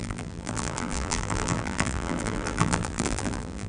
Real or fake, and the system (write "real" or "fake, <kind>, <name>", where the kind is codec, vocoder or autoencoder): fake, vocoder, BigVGAN v2